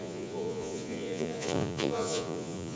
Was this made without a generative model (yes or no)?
no